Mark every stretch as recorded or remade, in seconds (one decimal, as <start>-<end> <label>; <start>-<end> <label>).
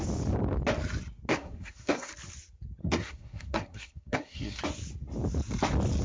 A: 0.0-1.3 recorded; 1.3-2.1 remade; 2.1-2.8 recorded; 2.8-4.6 remade; 4.6-6.0 recorded